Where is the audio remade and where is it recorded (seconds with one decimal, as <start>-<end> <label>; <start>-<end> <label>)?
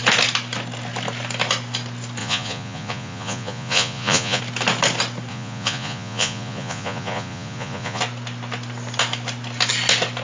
0.0-2.2 recorded; 2.2-4.4 remade; 4.4-5.3 recorded; 5.3-8.0 remade; 8.0-10.2 recorded